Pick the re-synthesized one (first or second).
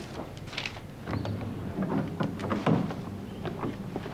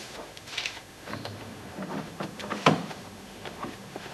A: second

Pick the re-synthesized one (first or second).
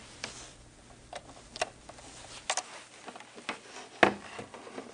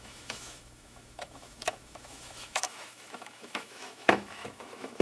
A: second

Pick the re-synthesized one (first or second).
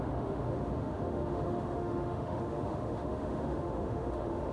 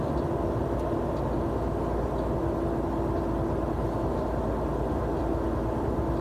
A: first